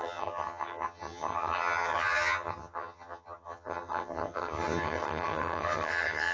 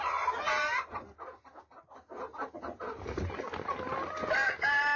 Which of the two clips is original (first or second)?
second